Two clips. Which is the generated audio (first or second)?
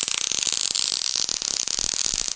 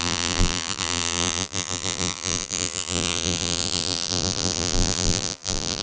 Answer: second